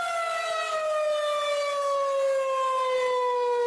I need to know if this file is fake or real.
real